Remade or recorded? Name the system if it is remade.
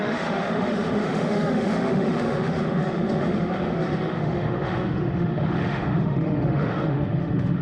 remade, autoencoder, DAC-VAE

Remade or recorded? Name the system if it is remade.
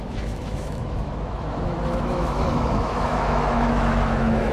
remade, autoencoder, DAC-VAE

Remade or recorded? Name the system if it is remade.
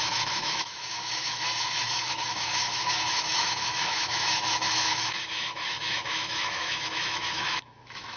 remade, autoencoder, DAC-VAE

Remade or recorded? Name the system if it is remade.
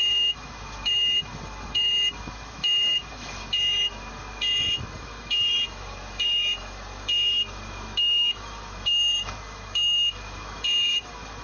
remade, autoencoder, DAC-VAE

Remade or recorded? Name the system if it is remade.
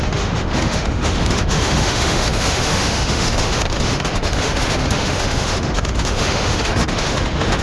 remade, autoencoder, DAC-VAE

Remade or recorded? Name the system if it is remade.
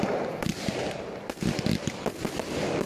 recorded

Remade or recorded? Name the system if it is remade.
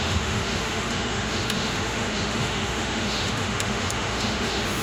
remade, autoencoder, DAC-VAE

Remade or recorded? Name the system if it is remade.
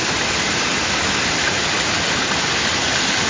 recorded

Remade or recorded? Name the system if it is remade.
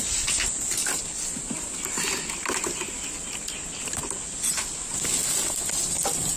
recorded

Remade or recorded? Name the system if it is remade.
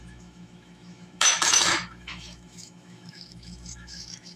remade, autoencoder, DAC-VAE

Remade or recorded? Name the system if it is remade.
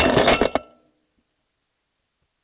recorded